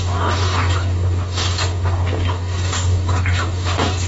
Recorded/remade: remade